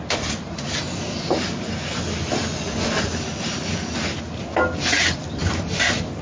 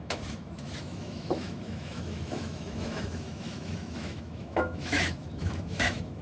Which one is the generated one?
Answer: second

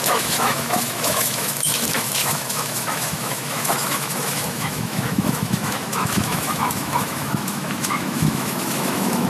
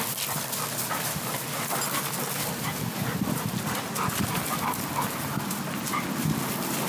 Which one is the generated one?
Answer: first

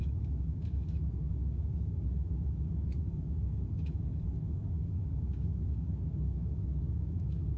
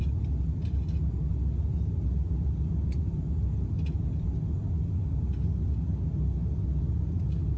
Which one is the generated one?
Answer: first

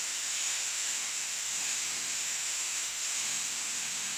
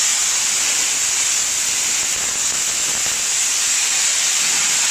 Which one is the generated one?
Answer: first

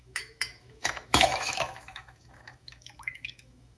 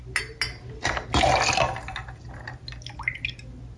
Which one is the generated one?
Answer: first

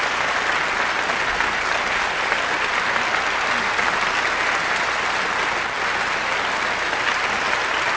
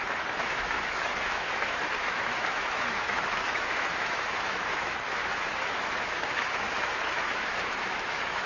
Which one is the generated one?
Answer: second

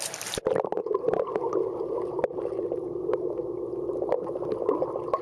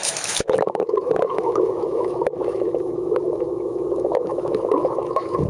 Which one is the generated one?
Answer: second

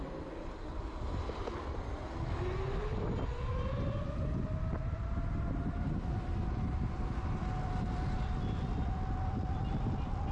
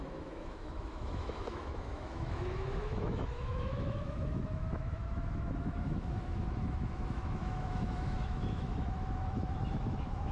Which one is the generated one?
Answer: second